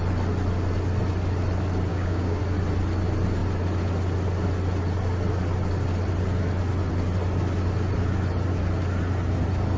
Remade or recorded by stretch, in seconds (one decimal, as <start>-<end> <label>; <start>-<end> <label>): 0.0-1.9 recorded; 1.9-2.4 remade; 2.4-9.8 recorded